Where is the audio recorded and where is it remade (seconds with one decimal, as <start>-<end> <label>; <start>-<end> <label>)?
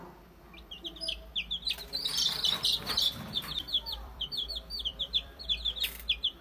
0.0-2.1 recorded; 2.1-5.4 remade; 5.4-6.4 recorded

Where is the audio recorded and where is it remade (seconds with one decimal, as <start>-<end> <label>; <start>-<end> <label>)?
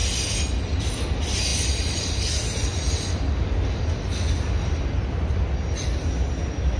0.0-1.5 recorded; 1.5-2.0 remade; 2.0-6.8 recorded